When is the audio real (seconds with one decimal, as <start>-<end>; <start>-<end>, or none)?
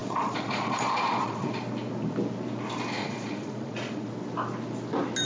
1.6-3.0; 4.1-5.3